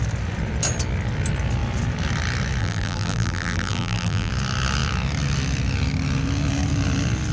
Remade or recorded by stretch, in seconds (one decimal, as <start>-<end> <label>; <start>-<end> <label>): 0.0-2.6 recorded; 2.6-4.3 remade; 4.3-7.3 recorded